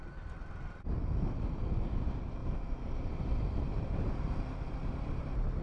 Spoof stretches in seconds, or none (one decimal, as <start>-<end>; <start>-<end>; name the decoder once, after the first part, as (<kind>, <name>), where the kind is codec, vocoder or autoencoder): 2.4-4.0 (vocoder, BigVGAN v2)